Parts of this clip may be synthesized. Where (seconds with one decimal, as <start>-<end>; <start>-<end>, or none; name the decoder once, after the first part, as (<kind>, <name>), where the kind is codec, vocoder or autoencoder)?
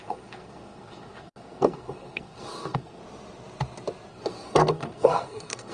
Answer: 0.0-3.0 (codec, SNAC); 4.1-5.7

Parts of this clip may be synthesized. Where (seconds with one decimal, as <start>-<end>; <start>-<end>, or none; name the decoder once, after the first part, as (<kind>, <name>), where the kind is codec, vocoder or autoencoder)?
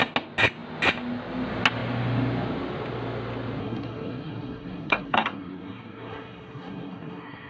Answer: 3.6-7.5 (codec, SNAC)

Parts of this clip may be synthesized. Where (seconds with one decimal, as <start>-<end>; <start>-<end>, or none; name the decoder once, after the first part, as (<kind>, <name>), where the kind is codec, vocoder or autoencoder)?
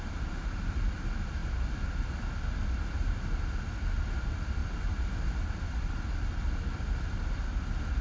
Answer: none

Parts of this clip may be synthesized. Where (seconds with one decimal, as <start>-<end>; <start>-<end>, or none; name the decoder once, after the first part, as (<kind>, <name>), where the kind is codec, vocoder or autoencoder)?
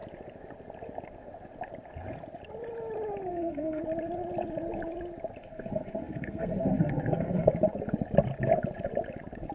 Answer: 3.3-3.8 (codec, SNAC); 5.4-7.5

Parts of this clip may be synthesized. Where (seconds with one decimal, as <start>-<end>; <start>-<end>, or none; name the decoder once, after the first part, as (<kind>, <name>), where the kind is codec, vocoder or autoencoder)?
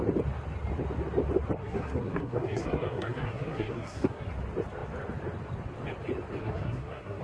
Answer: 1.6-4.3 (codec, SNAC); 6.4-7.2